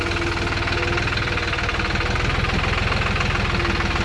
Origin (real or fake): real